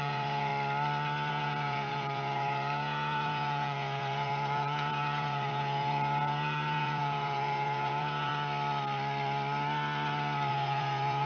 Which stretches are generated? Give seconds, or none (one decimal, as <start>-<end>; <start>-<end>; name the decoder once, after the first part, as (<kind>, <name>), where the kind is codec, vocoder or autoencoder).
0.0-0.5 (vocoder, Vocos); 1.3-8.3; 10.5-11.3